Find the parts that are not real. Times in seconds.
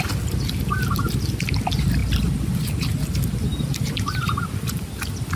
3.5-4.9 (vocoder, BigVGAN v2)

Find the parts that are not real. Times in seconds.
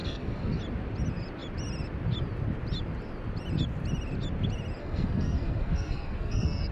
0.0-0.6 (codec, SNAC); 4.8-6.7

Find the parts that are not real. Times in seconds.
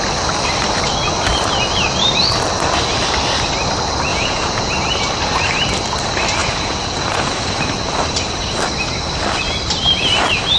4.1-4.7 (vocoder, Vocos); 6.4-7.2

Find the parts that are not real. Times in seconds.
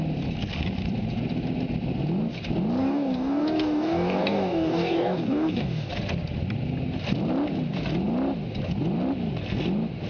2.8-5.9 (codec, DAC)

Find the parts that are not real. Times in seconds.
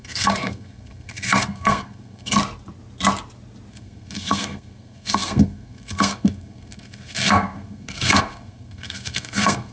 0.0-2.4 (codec, SNAC); 3.7-9.7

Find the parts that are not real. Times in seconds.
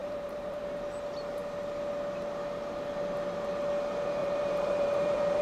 0.0-0.6 (vocoder, BigVGAN v2); 4.2-5.4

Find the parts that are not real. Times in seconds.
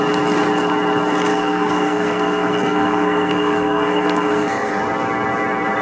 1.3-4.8 (codec, SNAC)